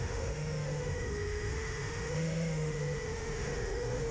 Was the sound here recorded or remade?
remade